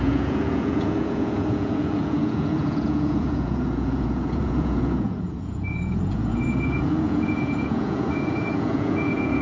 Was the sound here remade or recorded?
remade